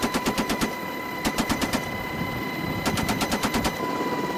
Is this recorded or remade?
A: remade